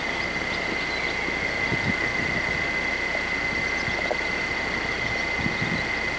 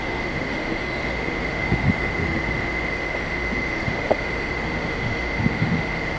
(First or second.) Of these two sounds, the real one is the first